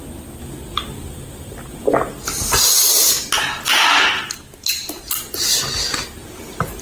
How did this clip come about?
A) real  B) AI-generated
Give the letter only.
A